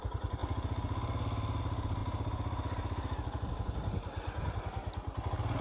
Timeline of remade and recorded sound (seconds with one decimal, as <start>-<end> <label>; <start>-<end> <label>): 0.0-0.4 remade; 0.4-1.6 recorded; 1.6-2.0 remade; 2.0-5.6 recorded